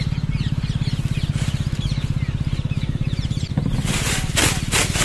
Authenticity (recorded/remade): recorded